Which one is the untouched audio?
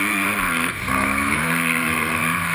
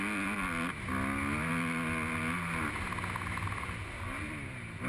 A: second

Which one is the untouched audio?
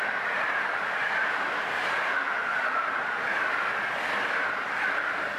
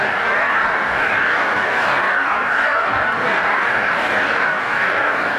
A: first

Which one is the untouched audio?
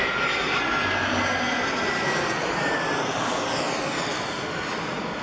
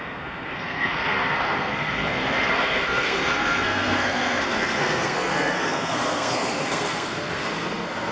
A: first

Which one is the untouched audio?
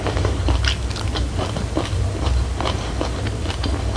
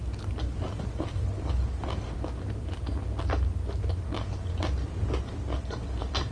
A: second